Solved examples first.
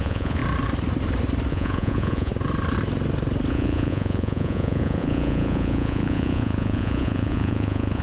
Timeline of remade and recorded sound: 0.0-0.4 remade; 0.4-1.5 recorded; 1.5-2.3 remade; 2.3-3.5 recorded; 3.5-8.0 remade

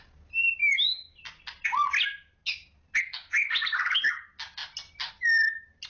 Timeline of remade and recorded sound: 0.0-5.9 recorded

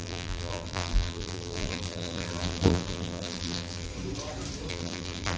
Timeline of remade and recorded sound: 0.0-3.9 remade; 3.9-4.7 recorded; 4.7-5.4 remade

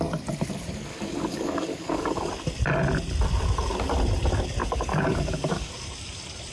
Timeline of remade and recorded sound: 0.0-0.9 recorded; 0.9-2.3 remade; 2.3-4.6 recorded; 4.6-5.7 remade; 5.7-6.5 recorded

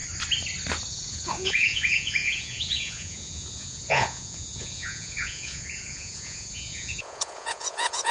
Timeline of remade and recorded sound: 0.0-0.9 recorded; 0.9-8.1 remade

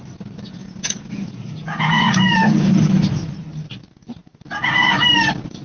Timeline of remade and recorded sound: 0.0-0.6 recorded; 0.6-2.9 remade; 2.9-5.6 recorded

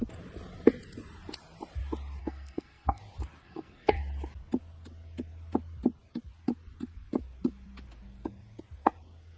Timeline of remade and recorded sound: 0.0-2.2 recorded; 2.2-3.0 remade; 3.0-3.4 recorded; 3.4-4.0 remade; 4.0-9.4 recorded

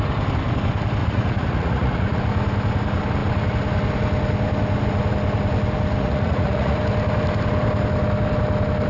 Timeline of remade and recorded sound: 0.0-1.0 recorded; 1.0-2.2 remade; 2.2-6.0 recorded; 6.0-6.8 remade; 6.8-8.9 recorded